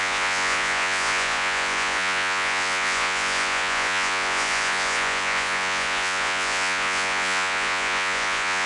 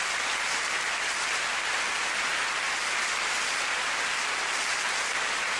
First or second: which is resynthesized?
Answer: first